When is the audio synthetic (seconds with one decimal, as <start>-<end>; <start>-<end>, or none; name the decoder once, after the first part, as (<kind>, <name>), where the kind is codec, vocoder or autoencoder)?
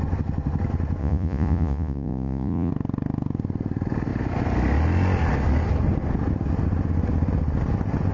1.0-2.7 (vocoder, Vocos)